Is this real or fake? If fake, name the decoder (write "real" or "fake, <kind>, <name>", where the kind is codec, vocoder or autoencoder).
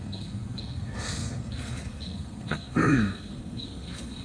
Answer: fake, codec, SNAC